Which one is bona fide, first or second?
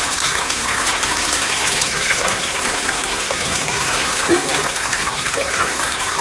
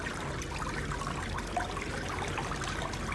second